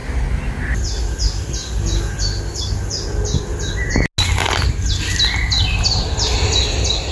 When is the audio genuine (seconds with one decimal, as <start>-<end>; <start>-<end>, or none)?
0.0-7.1